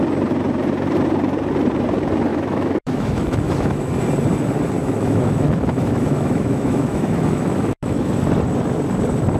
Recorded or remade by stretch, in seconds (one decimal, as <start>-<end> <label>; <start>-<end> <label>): 0.0-2.3 recorded; 2.3-4.0 remade; 4.0-4.8 recorded; 4.8-8.1 remade; 8.1-9.4 recorded